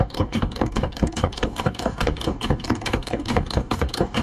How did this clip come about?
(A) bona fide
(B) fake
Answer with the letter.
B